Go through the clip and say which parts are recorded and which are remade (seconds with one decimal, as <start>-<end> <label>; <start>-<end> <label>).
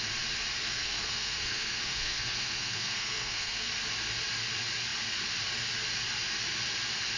0.0-0.6 recorded; 0.6-3.7 remade; 3.7-7.2 recorded